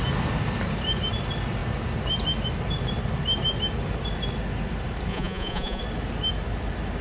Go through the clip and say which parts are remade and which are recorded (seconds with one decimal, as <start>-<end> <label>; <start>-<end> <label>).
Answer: 0.0-5.1 recorded; 5.1-5.8 remade; 5.8-7.0 recorded